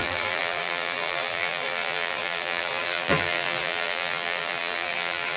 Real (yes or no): no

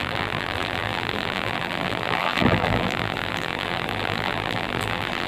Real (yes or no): no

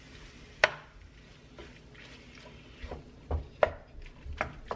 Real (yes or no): yes